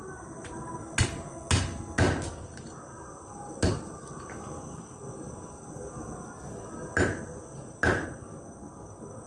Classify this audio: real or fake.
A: real